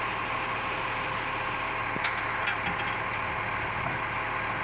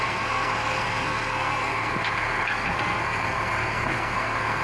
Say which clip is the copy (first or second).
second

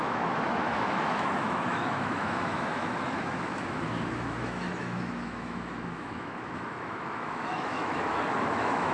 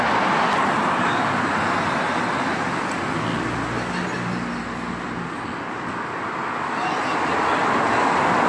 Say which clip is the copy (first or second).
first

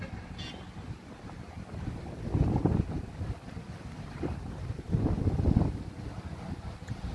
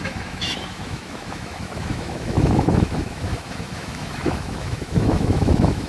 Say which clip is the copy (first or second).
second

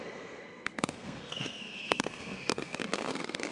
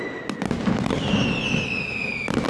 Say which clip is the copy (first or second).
first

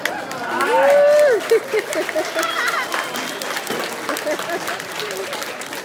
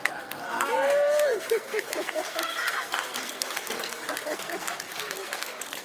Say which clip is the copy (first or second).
second